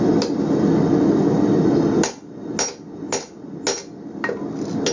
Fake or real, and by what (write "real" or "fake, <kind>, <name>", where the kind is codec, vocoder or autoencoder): real